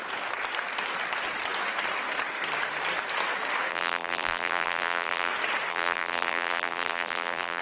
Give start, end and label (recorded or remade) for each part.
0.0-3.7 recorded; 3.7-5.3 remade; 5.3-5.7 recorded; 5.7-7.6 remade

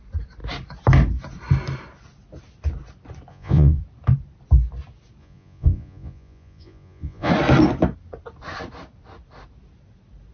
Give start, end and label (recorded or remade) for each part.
0.0-3.3 recorded; 3.3-3.8 remade; 3.8-5.2 recorded; 5.2-7.3 remade; 7.3-10.3 recorded

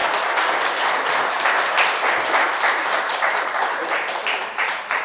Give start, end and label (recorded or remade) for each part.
0.0-3.0 recorded; 3.0-3.8 remade; 3.8-4.4 recorded; 4.4-5.0 remade